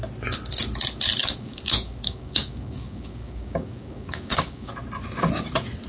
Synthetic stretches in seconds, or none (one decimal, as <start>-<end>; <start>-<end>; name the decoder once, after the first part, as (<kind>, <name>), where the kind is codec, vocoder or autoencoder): 1.2-4.7 (codec, DAC)